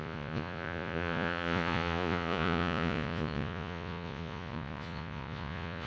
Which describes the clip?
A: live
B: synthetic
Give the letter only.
B